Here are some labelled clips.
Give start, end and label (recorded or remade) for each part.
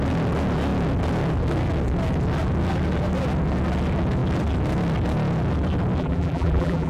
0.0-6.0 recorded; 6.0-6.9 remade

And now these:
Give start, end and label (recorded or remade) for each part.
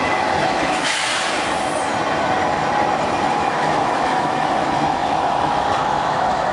0.0-1.0 remade; 1.0-3.3 recorded; 3.3-6.5 remade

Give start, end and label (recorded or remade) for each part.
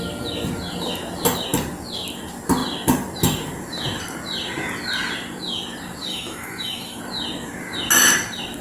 0.0-6.1 recorded; 6.1-7.0 remade; 7.0-8.6 recorded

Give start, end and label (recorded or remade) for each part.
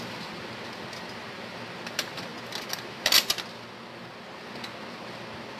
0.0-5.6 recorded